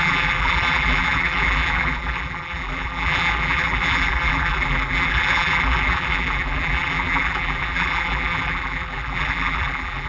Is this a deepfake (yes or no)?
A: yes